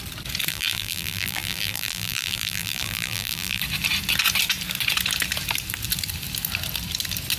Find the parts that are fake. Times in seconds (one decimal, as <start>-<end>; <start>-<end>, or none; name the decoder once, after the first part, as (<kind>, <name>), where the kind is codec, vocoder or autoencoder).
0.5-3.6 (vocoder, BigVGAN v2)